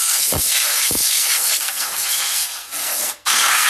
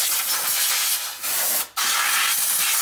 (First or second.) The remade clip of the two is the first